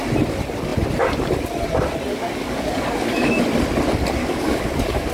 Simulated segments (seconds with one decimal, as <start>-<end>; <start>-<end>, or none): 2.1-3.4; 4.2-5.1